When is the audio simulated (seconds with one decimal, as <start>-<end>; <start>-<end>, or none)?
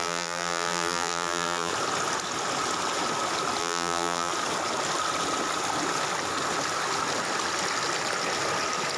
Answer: 0.0-1.7; 3.6-4.3